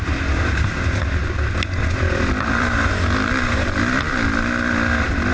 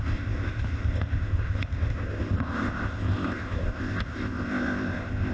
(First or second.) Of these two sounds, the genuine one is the first